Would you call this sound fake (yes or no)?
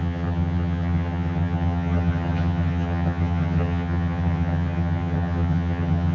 yes